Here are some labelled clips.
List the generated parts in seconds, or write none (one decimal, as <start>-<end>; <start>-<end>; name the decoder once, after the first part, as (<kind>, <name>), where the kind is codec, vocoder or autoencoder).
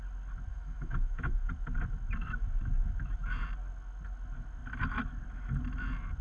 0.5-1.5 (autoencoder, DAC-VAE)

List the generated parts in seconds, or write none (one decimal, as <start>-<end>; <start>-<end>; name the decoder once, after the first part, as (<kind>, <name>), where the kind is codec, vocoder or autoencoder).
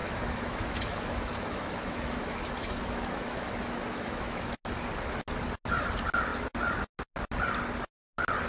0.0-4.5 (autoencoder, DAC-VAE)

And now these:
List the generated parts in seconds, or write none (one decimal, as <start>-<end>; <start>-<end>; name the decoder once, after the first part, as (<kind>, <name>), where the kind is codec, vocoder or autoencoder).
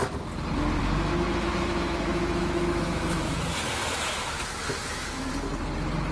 0.8-3.4 (autoencoder, DAC-VAE); 3.8-5.3